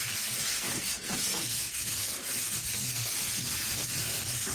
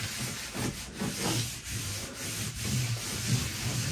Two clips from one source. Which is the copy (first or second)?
first